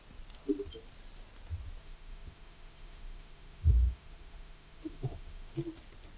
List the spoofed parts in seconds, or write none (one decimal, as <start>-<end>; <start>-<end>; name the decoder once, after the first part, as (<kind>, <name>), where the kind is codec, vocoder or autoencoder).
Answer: 1.8-5.5 (autoencoder, DAC-VAE)